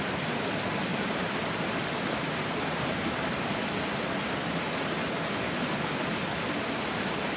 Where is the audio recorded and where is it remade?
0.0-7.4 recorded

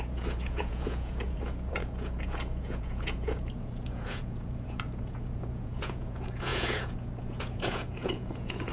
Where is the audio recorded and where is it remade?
0.0-8.7 remade

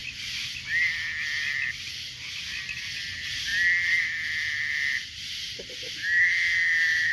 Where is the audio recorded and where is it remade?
0.0-6.0 recorded; 6.0-7.1 remade

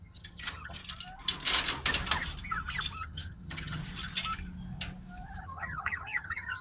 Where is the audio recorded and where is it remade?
0.0-0.8 remade; 0.8-2.9 recorded; 2.9-3.8 remade; 3.8-5.4 recorded; 5.4-6.6 remade

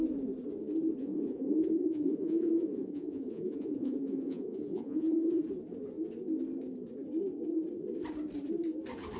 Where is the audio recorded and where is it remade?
0.0-1.0 recorded; 1.0-5.4 remade; 5.4-9.2 recorded

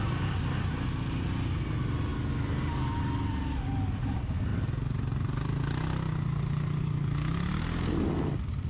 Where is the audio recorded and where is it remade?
0.0-8.7 recorded

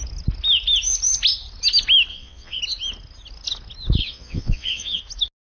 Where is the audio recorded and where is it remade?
0.0-2.1 recorded; 2.1-2.6 remade; 2.6-4.0 recorded; 4.0-5.0 remade; 5.0-5.5 recorded

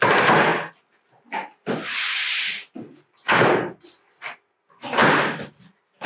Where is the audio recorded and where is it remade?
0.0-6.1 recorded